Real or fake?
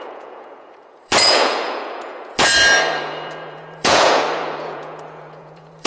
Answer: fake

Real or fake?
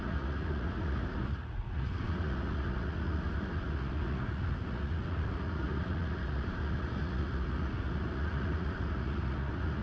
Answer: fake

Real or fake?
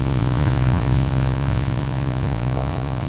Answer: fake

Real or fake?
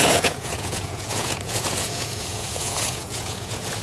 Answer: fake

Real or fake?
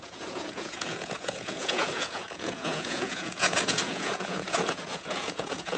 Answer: fake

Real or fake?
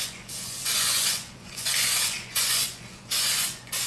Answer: fake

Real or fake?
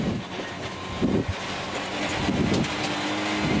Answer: real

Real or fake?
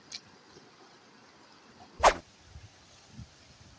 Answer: real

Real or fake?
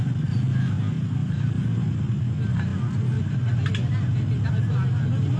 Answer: real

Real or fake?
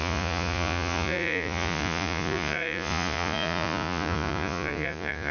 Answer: fake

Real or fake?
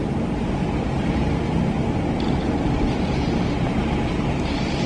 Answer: real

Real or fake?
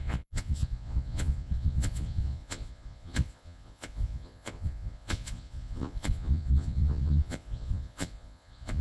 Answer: fake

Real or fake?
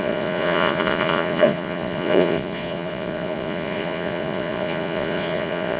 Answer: fake